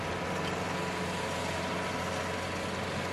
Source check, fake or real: real